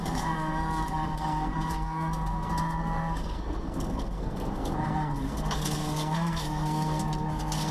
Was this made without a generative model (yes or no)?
no